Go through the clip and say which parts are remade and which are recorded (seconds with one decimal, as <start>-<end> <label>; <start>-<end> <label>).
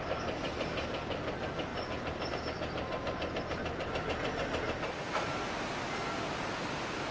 0.0-7.1 recorded